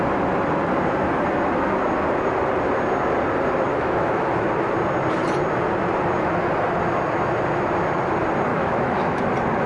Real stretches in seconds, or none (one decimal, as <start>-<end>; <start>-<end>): 0.0-3.7; 4.3-8.5; 9.2-9.7